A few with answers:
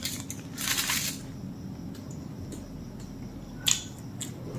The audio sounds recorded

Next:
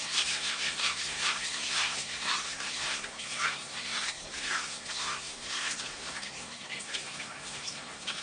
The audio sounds remade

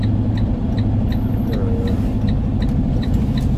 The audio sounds recorded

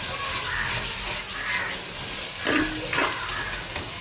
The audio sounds recorded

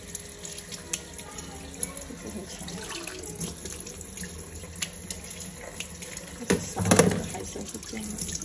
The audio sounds recorded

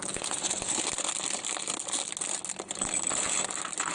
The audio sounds recorded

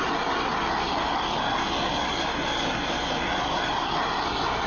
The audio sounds recorded